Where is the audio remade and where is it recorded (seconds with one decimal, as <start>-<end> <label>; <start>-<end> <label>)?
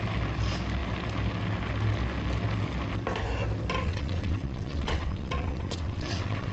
0.0-3.8 recorded; 3.8-6.5 remade